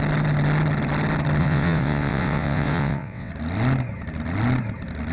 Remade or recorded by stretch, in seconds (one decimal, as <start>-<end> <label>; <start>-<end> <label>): 0.0-1.4 recorded; 1.4-3.3 remade; 3.3-5.1 recorded